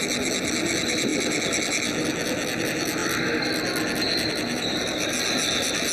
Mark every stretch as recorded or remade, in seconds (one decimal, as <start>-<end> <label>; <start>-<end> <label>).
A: 0.0-5.9 recorded